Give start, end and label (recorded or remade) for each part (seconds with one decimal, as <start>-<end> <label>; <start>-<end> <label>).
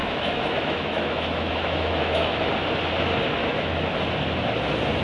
0.0-2.5 remade; 2.5-3.4 recorded; 3.4-3.9 remade; 3.9-5.0 recorded